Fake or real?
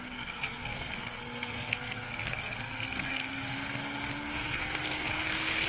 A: fake